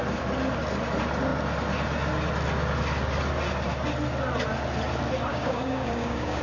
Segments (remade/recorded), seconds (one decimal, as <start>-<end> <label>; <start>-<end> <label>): 0.0-5.3 recorded; 5.3-6.4 remade